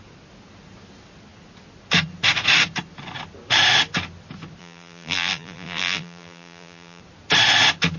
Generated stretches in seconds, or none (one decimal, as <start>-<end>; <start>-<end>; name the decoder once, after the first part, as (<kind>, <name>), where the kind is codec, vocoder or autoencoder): 4.6-7.0 (vocoder, BigVGAN v2)